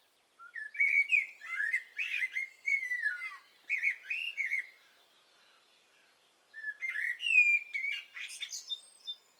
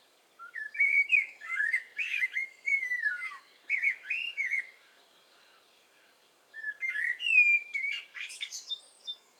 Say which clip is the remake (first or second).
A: second